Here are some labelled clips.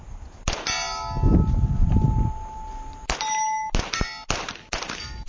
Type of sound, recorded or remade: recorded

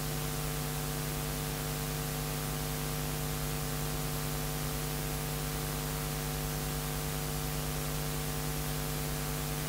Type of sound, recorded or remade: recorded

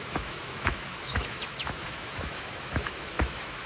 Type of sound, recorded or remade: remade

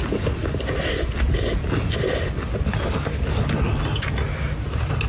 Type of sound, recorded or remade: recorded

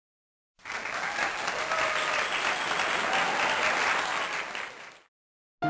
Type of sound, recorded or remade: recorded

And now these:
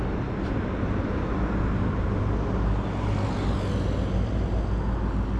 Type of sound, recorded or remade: recorded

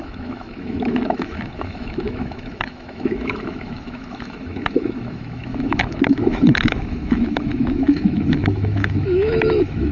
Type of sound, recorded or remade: remade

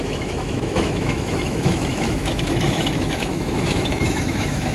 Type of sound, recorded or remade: remade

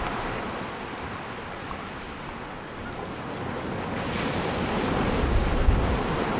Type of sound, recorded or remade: recorded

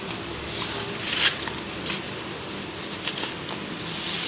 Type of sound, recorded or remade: recorded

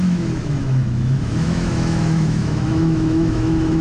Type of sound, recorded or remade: remade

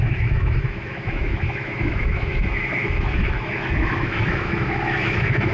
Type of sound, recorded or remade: remade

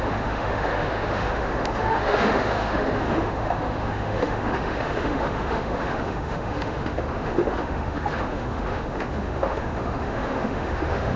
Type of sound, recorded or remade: remade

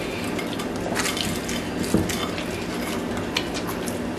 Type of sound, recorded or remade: recorded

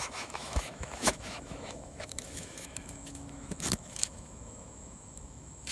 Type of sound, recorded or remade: remade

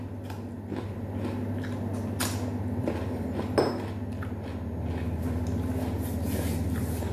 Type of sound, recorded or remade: recorded